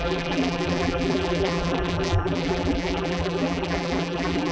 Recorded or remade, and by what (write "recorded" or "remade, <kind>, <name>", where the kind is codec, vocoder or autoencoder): remade, vocoder, BigVGAN v2